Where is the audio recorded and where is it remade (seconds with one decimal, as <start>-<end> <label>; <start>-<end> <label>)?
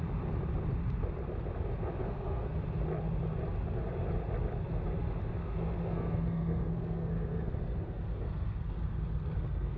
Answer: 0.0-2.0 recorded; 2.0-2.6 remade; 2.6-5.4 recorded; 5.4-9.8 remade